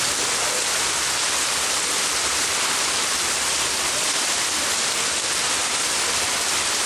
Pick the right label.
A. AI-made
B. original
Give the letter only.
A